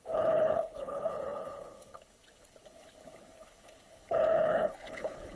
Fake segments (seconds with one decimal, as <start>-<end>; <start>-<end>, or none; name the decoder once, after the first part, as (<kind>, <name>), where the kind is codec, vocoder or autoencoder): 0.0-5.4 (codec, HILCodec)